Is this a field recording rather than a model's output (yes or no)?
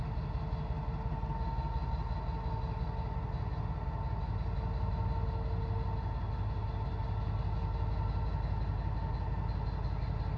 yes